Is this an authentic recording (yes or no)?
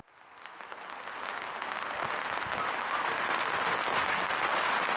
yes